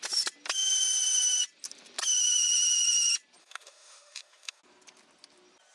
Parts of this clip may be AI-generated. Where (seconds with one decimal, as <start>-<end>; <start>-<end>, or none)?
3.4-4.6